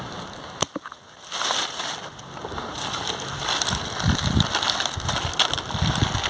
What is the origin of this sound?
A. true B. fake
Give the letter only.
A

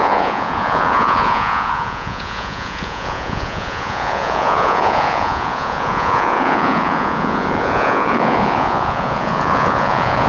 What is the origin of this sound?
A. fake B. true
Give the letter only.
A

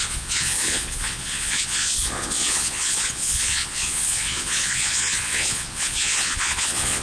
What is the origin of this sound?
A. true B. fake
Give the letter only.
B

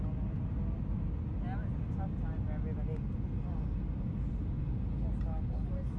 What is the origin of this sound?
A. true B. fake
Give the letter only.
A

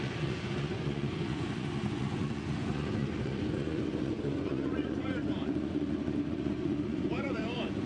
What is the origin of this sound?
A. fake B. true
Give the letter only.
A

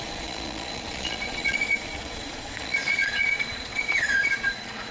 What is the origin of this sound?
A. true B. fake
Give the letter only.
B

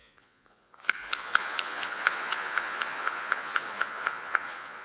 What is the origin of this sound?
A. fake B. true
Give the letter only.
A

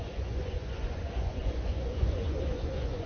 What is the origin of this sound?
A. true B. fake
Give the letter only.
B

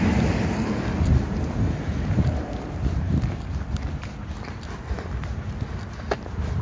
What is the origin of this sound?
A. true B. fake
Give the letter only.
A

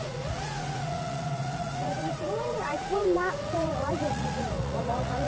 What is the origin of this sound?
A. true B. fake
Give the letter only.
B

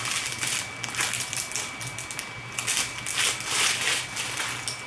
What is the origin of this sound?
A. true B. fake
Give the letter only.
A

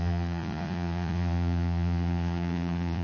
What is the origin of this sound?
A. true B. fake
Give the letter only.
B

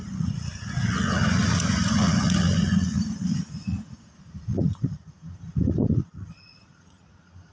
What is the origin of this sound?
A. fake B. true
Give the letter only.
A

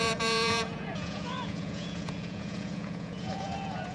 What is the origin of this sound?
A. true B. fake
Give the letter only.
B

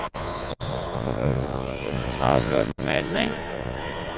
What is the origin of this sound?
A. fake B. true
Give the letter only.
A